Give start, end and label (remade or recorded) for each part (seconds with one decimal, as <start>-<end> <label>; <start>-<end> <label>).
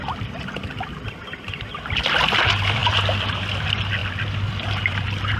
0.0-5.4 recorded